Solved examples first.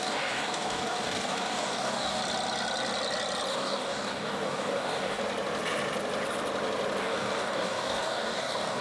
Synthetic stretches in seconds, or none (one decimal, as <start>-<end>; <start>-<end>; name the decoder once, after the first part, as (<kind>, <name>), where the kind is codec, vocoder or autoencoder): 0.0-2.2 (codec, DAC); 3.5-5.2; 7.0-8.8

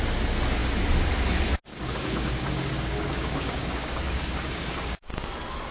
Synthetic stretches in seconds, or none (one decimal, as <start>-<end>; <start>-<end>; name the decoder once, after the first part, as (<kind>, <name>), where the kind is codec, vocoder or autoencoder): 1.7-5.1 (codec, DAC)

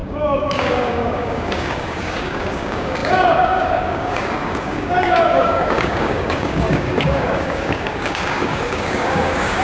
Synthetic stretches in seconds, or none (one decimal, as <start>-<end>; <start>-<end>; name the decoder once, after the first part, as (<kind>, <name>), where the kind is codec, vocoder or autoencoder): 0.0-9.6 (codec, DAC)